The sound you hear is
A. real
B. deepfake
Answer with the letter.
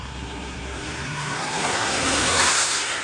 B